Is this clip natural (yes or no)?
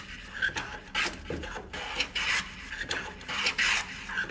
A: yes